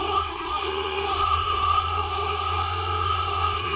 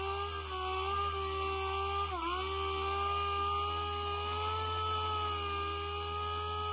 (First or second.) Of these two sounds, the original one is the second